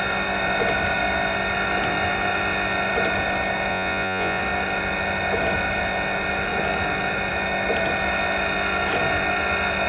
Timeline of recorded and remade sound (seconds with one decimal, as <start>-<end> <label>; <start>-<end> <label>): 0.0-3.7 recorded; 3.7-4.4 remade; 4.4-9.9 recorded